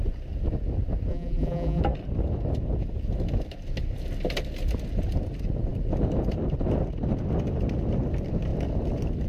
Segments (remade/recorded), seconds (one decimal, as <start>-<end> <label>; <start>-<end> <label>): 0.0-1.1 recorded; 1.1-1.8 remade; 1.8-9.3 recorded

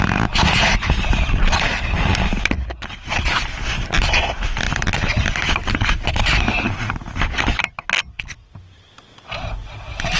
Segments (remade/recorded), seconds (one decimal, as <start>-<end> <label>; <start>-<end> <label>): 0.0-5.6 recorded; 5.6-6.5 remade; 6.5-10.2 recorded

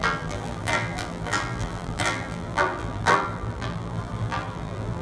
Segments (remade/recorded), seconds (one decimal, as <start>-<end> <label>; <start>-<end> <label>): 0.0-5.0 remade

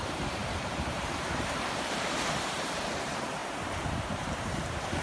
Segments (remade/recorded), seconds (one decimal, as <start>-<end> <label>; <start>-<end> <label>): 0.0-5.0 remade

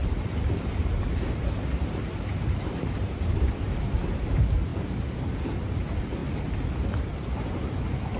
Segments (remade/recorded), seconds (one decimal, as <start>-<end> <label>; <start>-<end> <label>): 0.0-3.8 remade; 3.8-6.2 recorded; 6.2-8.2 remade

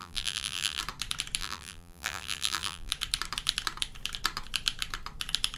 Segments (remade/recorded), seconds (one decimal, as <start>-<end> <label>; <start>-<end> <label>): 0.0-0.8 remade; 0.8-1.4 recorded; 1.4-2.9 remade; 2.9-5.6 recorded